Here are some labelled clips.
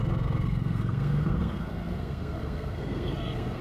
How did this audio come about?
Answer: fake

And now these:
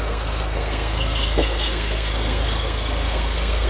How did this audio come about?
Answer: fake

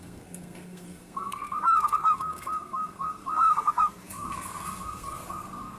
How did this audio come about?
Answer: fake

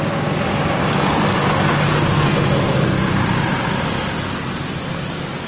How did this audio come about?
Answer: real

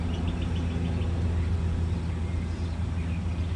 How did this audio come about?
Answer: real